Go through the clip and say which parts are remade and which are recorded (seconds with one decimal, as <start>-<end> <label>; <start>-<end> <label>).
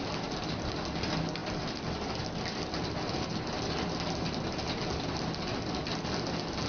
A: 0.0-6.7 recorded